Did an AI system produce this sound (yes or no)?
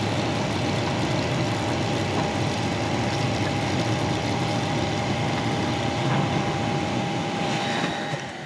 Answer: no